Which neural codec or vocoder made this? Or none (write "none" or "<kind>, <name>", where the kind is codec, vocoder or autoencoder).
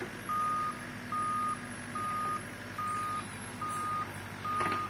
none